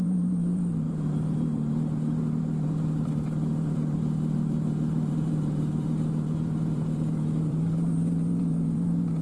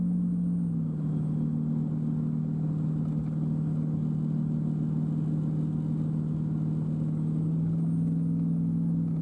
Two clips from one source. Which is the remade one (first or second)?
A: first